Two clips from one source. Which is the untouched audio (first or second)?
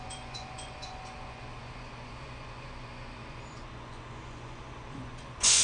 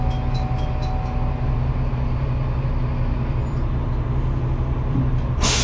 second